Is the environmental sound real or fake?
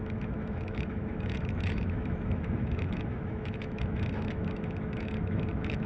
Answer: fake